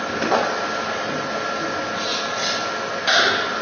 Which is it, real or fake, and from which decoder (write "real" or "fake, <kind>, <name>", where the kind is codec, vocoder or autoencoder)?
real